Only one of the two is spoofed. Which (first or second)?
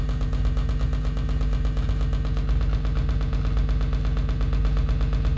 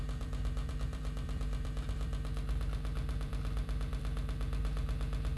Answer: second